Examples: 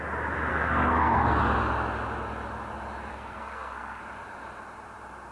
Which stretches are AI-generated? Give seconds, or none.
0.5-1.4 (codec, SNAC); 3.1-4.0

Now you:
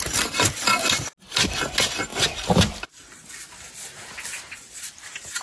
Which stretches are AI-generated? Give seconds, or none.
none

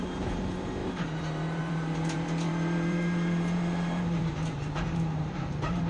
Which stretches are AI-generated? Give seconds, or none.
0.0-5.9 (vocoder, BigVGAN v2)

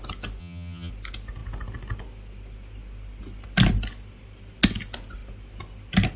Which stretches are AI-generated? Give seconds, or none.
0.4-0.9 (vocoder, HiFi-GAN)

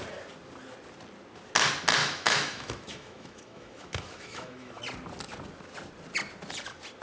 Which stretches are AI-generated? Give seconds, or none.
2.0-4.8 (autoencoder, DAC-VAE)

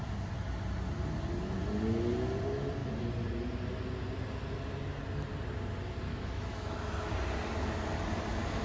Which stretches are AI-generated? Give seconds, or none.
6.1-7.1 (autoencoder, DAC-VAE)